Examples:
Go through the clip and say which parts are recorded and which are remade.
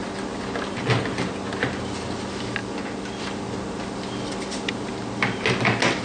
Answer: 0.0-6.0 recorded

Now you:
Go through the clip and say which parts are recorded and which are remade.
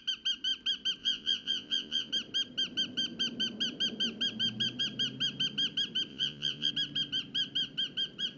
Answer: 0.0-1.0 recorded; 1.0-2.1 remade; 2.1-6.1 recorded; 6.1-6.7 remade; 6.7-8.4 recorded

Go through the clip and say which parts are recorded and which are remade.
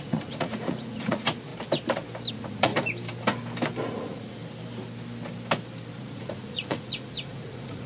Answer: 0.0-1.5 remade; 1.5-2.3 recorded; 2.3-2.7 remade; 2.7-3.9 recorded; 3.9-4.4 remade; 4.4-6.0 recorded; 6.0-7.9 remade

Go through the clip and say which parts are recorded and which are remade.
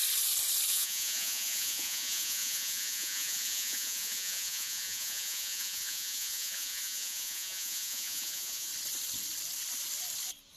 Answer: 0.0-0.7 recorded; 0.7-8.7 remade; 8.7-10.6 recorded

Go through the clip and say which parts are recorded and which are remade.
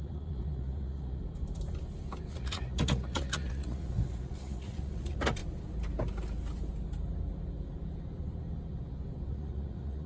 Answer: 0.0-1.2 remade; 1.2-2.3 recorded; 2.3-5.4 remade; 5.4-9.3 recorded; 9.3-10.1 remade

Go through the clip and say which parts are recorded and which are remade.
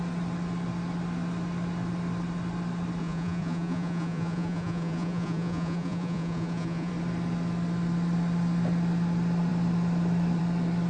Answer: 0.0-3.0 recorded; 3.0-6.9 remade; 6.9-10.9 recorded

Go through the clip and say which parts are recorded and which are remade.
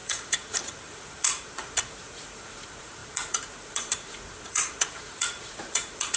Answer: 0.0-6.2 remade